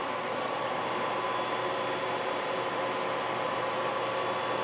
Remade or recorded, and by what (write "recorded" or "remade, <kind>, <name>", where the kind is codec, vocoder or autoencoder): recorded